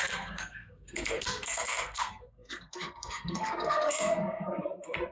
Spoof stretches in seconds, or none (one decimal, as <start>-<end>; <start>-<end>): 0.0-5.1